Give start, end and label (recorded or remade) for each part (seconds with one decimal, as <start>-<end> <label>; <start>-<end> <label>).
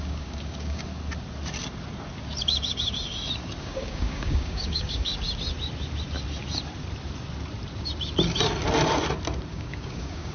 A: 0.0-0.9 remade; 0.9-3.6 recorded; 3.6-5.1 remade; 5.1-9.5 recorded; 9.5-10.3 remade